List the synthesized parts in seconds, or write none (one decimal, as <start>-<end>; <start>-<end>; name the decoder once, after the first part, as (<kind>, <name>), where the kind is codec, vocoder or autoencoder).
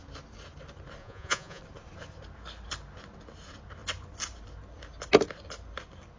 1.0-1.6 (vocoder, Vocos)